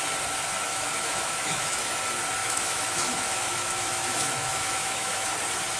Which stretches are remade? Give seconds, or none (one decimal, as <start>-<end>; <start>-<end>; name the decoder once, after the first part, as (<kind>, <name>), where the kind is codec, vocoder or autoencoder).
0.7-2.0 (autoencoder, DAC-VAE); 2.4-5.3